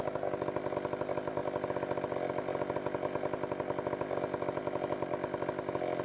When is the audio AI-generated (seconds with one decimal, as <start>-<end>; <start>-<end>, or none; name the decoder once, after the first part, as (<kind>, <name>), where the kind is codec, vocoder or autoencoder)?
none